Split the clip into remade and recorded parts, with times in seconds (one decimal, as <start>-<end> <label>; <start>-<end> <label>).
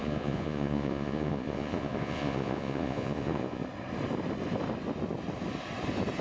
0.0-3.6 remade; 3.6-6.2 recorded